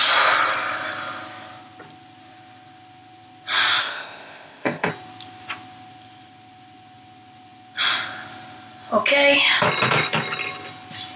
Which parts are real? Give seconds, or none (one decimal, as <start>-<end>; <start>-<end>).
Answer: 0.0-3.8; 4.9-11.2